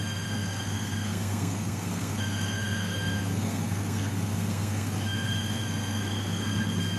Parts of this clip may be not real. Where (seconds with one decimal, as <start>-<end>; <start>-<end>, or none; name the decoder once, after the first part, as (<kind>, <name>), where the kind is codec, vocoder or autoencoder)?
0.0-7.0 (codec, SNAC)